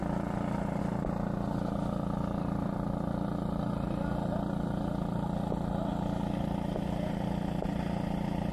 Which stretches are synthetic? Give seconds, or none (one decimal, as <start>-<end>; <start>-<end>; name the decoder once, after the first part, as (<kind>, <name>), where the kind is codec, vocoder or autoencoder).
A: none